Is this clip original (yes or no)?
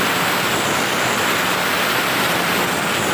yes